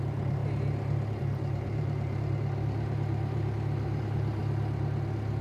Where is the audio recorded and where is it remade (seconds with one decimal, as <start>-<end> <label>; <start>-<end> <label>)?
0.0-0.4 remade; 0.4-1.2 recorded; 1.2-4.4 remade; 4.4-5.4 recorded